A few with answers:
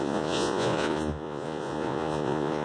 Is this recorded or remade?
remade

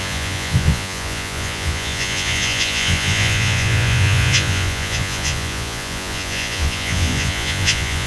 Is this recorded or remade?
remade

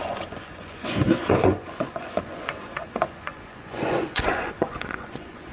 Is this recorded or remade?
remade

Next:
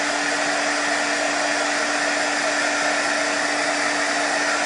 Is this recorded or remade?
recorded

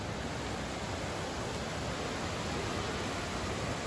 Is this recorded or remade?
recorded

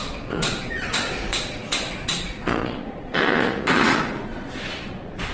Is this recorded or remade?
remade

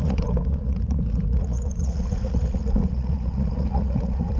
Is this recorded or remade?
remade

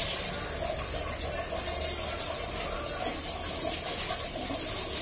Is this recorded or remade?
recorded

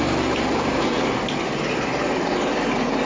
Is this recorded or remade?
recorded